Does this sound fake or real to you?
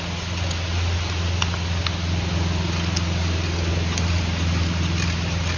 real